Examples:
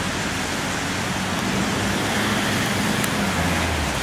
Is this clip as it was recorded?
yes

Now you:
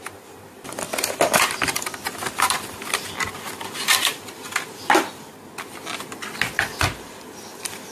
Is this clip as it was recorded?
yes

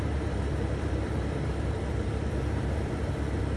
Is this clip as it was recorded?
no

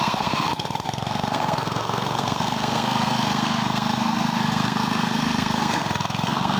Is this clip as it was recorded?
no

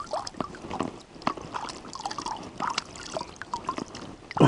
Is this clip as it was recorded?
yes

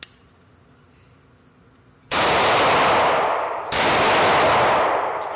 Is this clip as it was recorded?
yes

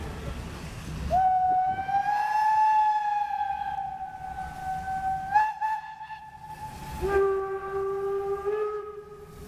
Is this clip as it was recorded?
yes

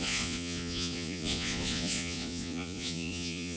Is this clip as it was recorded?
no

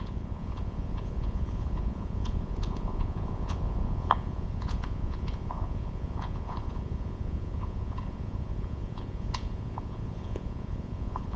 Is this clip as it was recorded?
no